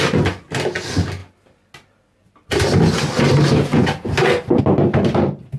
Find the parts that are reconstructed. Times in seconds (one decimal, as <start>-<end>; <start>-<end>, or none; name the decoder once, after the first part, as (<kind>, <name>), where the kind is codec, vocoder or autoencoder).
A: none